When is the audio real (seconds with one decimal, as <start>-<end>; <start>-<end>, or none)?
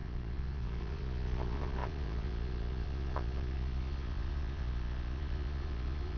none